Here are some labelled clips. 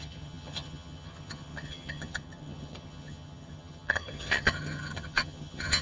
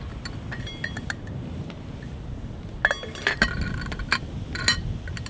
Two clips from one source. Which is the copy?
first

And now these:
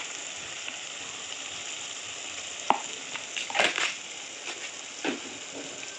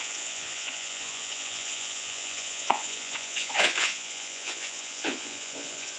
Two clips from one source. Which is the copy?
second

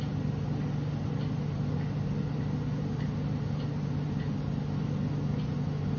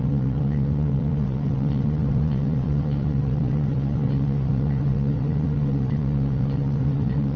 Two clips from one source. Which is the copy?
second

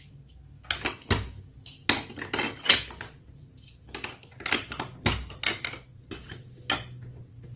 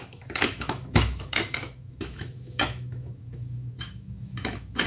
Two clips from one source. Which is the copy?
second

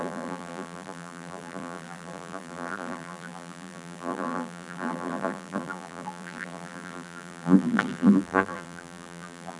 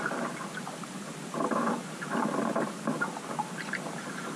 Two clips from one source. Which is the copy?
first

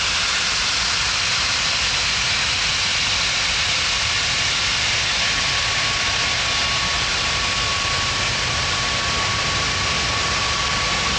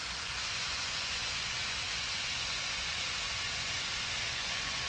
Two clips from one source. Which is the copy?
second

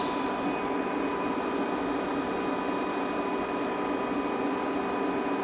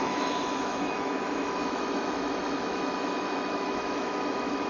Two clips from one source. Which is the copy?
second